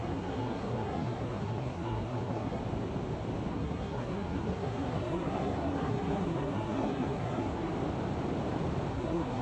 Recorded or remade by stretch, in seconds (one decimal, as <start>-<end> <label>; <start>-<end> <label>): 0.0-2.6 remade; 2.6-3.5 recorded; 3.5-7.7 remade; 7.7-8.9 recorded; 8.9-9.4 remade